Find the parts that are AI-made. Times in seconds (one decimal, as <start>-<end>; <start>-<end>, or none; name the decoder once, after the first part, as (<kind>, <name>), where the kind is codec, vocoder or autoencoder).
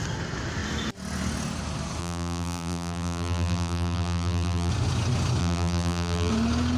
2.0-4.7 (vocoder, BigVGAN v2); 5.4-6.3